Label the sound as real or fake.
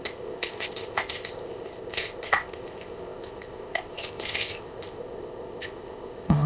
fake